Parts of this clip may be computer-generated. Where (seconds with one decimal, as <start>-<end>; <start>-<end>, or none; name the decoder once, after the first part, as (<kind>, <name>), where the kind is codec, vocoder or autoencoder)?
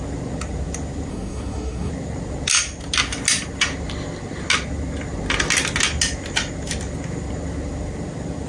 1.1-1.9 (codec, SNAC)